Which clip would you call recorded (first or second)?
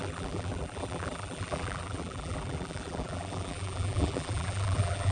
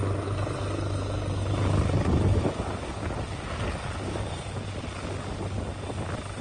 second